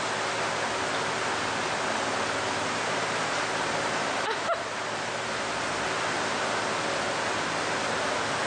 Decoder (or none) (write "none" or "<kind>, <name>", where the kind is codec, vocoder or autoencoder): none